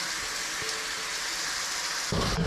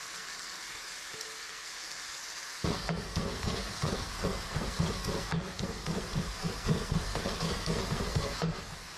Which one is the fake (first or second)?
second